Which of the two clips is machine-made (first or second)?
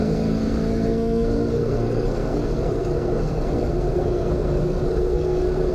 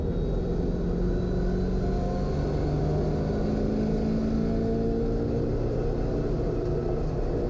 first